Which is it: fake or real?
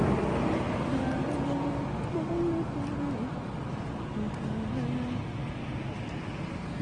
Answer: real